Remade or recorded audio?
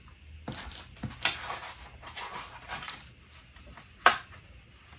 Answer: recorded